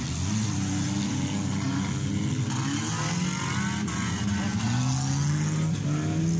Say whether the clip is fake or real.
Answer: real